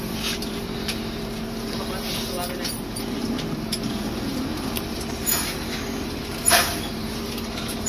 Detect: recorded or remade remade